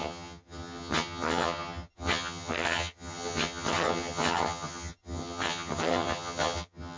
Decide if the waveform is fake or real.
fake